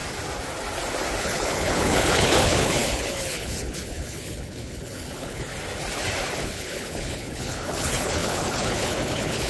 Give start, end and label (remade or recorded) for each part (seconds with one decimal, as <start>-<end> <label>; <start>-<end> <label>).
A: 0.0-1.2 recorded; 1.2-5.5 remade; 5.5-6.4 recorded; 6.4-9.5 remade